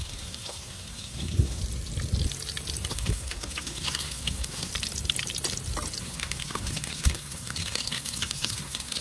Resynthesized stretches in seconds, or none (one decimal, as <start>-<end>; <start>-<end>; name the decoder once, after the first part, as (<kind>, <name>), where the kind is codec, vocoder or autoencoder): 0.0-1.6 (codec, SNAC); 2.9-4.7; 6.0-9.0

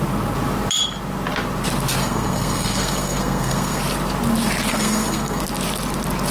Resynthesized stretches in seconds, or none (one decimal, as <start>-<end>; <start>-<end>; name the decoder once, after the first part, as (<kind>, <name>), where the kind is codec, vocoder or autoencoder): 2.0-3.8 (codec, SNAC); 4.7-5.4

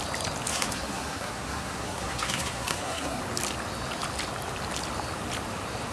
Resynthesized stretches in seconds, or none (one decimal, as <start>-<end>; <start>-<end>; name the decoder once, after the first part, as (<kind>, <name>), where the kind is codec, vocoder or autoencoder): 0.5-3.2 (codec, SNAC)

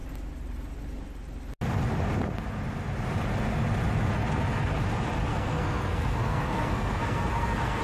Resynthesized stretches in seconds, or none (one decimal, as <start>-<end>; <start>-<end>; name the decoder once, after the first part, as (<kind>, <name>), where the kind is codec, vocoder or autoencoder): 5.3-7.8 (codec, SNAC)